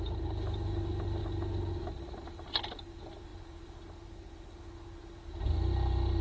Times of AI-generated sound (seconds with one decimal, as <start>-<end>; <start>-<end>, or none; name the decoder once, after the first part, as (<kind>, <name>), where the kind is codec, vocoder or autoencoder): none